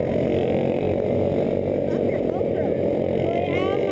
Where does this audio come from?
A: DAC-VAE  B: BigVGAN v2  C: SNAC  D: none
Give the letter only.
D